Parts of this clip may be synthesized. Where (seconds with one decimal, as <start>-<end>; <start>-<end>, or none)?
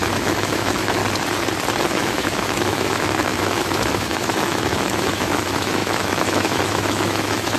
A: 0.0-1.0; 1.8-7.6